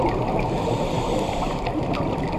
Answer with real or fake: real